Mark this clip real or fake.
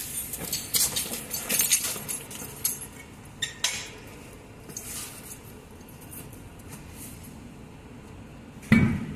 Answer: real